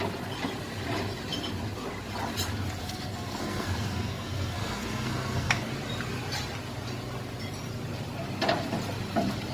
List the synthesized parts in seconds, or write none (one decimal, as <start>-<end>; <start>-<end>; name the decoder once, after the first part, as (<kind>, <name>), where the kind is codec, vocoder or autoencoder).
2.8-5.7 (codec, SNAC)